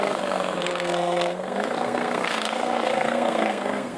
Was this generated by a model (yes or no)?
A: yes